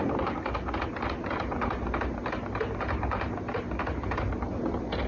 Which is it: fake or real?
real